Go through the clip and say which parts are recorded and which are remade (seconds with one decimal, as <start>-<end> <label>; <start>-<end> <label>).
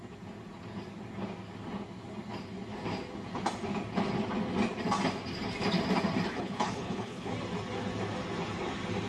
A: 0.0-6.3 recorded; 6.3-7.3 remade; 7.3-9.1 recorded